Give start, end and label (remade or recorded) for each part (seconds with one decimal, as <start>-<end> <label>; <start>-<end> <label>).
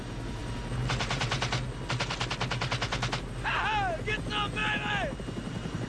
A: 0.0-5.9 recorded